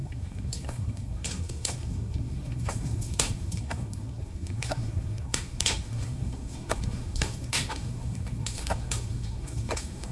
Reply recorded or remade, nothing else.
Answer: remade